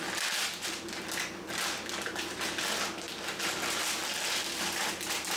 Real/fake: real